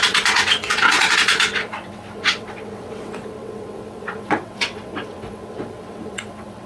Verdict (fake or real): fake